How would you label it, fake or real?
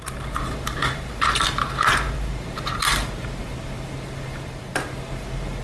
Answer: fake